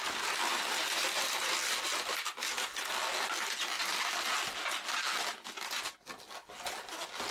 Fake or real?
real